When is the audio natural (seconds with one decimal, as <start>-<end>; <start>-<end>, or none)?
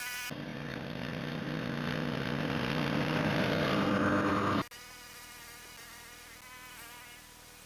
0.0-7.7